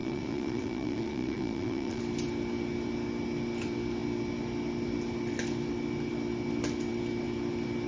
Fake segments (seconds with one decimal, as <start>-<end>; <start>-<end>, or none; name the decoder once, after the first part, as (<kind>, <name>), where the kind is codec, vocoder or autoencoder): 0.0-2.0 (vocoder, Vocos)

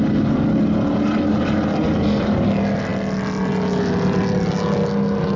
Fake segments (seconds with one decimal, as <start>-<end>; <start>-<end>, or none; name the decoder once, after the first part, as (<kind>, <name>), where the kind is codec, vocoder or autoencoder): none

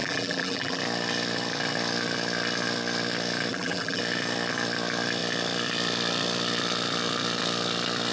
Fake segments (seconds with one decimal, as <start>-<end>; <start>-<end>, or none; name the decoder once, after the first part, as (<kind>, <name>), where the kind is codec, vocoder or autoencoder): 0.0-0.8 (vocoder, BigVGAN v2); 3.5-4.0

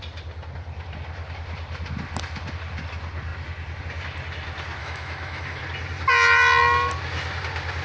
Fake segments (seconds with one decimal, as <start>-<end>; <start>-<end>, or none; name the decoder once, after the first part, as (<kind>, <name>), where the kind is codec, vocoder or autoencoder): 4.8-5.6 (autoencoder, DAC-VAE)

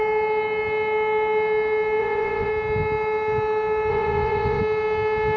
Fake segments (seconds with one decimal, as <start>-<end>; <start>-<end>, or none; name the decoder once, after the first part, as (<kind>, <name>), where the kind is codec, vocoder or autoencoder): 2.0-2.5 (vocoder, Vocos); 3.9-4.6

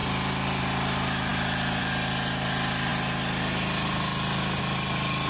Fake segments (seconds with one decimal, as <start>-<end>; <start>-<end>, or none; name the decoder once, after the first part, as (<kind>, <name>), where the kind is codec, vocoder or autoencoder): none